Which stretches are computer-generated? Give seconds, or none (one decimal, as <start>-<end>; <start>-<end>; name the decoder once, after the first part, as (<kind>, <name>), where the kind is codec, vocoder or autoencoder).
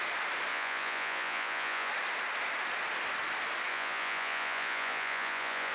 0.5-1.9 (vocoder, Vocos); 3.7-5.7